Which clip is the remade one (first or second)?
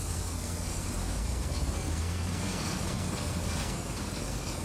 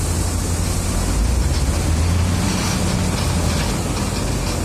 first